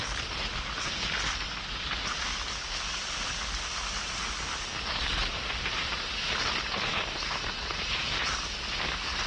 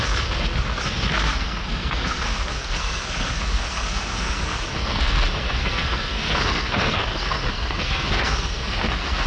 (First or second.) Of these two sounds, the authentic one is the first